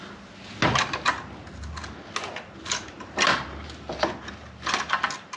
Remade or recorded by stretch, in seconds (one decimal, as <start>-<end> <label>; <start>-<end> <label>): 0.0-5.4 recorded